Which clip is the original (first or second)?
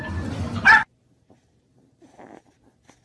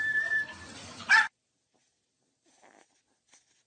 first